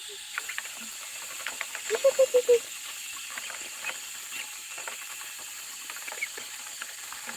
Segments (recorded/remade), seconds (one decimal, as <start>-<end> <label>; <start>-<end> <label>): 0.0-3.0 recorded; 3.0-7.0 remade; 7.0-7.4 recorded